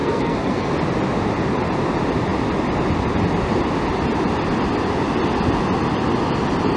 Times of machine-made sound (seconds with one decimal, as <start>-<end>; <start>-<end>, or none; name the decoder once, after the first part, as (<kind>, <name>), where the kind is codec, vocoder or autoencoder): 0.0-0.7 (codec, SNAC)